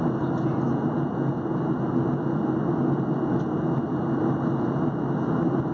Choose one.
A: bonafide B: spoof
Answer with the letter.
A